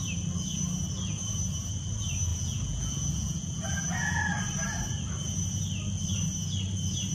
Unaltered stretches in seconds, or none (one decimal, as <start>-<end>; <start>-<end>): 0.0-2.3; 4.2-7.1